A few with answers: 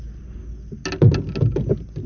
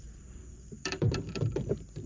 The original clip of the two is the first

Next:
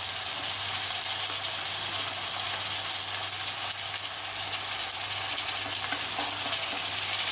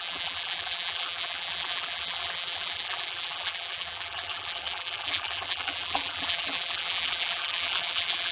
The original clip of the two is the first